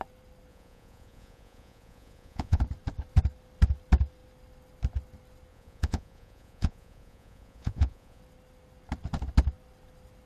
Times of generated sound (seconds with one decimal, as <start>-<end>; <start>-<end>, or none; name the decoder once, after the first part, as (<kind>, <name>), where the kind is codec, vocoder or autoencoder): 0.5-2.6 (vocoder, Vocos); 5.5-8.2